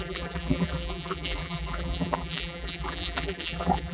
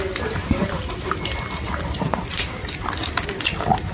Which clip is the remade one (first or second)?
first